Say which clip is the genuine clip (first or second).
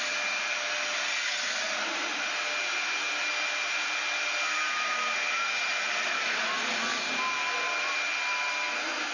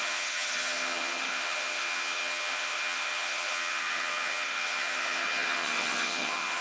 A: first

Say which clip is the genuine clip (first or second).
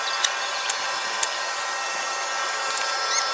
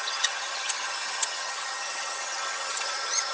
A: first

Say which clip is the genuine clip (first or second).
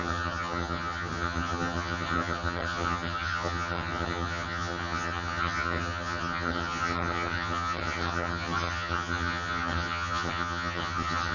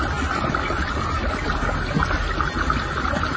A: second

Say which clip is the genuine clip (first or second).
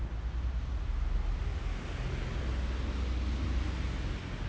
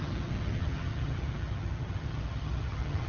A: first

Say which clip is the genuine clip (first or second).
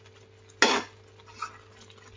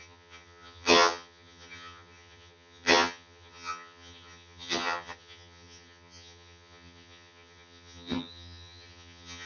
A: first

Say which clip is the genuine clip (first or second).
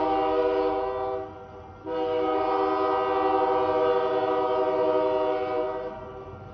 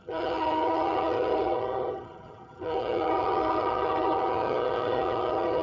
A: first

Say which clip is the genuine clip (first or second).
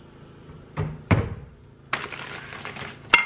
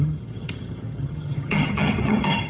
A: first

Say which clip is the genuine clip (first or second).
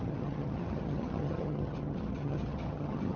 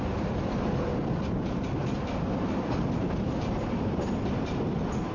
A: second